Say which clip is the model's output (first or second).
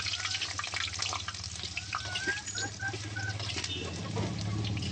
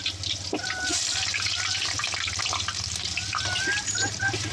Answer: second